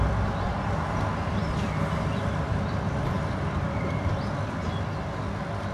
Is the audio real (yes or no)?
yes